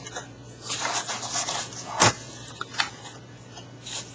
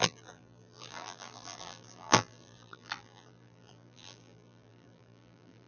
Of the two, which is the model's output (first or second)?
second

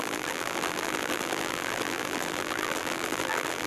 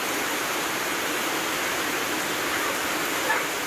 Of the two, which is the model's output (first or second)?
first